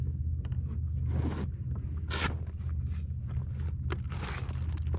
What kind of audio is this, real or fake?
real